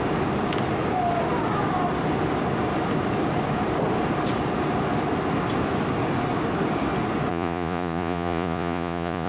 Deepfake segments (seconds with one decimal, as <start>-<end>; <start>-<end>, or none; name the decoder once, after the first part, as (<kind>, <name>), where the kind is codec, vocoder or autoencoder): 7.3-9.3 (vocoder, Vocos)